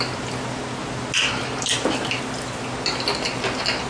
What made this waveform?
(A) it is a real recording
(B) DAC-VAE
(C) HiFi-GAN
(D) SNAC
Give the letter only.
A